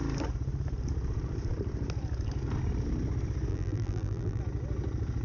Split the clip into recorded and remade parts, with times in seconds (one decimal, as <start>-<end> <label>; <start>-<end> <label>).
0.0-3.5 recorded; 3.5-4.4 remade; 4.4-5.2 recorded